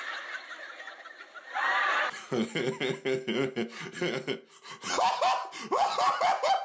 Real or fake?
real